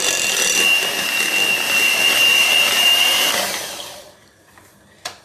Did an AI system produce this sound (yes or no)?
yes